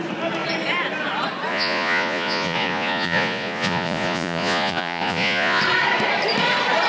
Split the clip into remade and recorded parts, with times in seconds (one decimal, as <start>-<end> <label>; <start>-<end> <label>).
0.0-1.5 recorded; 1.5-5.6 remade; 5.6-6.9 recorded